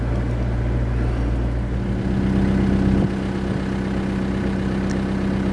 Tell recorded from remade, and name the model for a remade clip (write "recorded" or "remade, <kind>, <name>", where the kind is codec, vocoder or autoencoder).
recorded